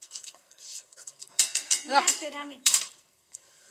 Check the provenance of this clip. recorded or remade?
remade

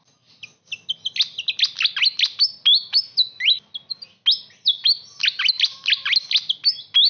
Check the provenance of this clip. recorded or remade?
recorded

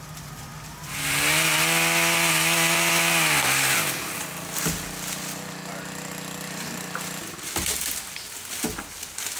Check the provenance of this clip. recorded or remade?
recorded